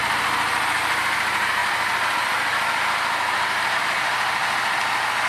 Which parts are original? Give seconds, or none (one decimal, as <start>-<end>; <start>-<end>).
0.0-5.3